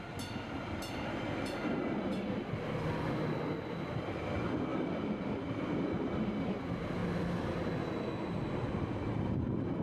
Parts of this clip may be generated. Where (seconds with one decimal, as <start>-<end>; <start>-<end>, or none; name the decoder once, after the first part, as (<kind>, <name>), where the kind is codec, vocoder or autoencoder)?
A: none